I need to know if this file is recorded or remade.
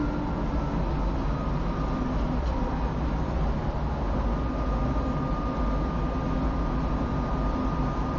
recorded